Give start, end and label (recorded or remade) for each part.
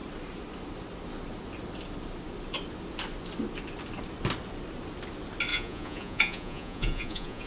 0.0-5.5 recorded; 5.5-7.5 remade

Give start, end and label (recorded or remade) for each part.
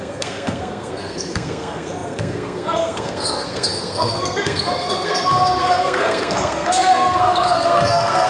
0.0-8.3 remade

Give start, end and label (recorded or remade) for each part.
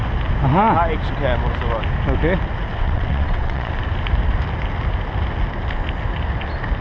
0.0-2.7 recorded; 2.7-3.7 remade; 3.7-6.8 recorded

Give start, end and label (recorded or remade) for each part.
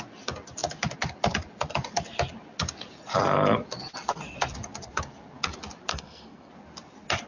0.0-5.9 recorded; 5.9-6.5 remade; 6.5-7.3 recorded